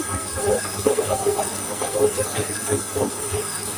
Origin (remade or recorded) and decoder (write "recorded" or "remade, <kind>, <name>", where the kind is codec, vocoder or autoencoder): remade, codec, SNAC